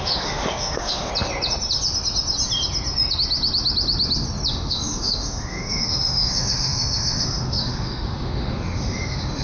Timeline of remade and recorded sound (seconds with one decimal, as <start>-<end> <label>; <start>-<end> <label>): 0.0-1.1 remade; 1.1-4.5 recorded; 4.5-9.4 remade